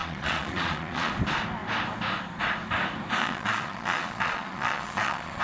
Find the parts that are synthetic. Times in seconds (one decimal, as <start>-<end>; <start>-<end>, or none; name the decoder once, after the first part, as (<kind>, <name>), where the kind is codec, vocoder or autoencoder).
0.0-1.1 (vocoder, Vocos); 3.2-5.4